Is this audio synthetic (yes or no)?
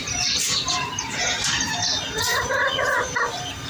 no